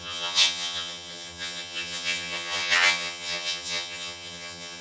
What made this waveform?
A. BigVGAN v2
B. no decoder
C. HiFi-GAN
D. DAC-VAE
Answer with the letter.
C